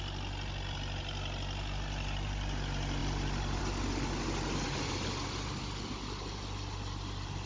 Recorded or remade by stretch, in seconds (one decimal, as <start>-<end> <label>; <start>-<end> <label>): 0.0-7.5 recorded